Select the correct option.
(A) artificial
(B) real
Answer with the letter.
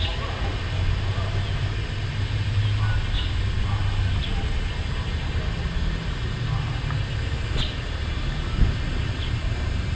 B